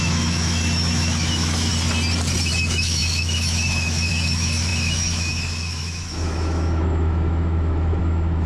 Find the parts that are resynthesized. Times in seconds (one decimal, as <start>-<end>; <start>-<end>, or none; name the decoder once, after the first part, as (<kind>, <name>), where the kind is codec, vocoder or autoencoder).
0.0-1.7 (autoencoder, DAC-VAE); 2.5-8.5